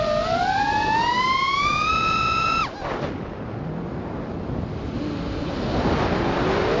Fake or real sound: real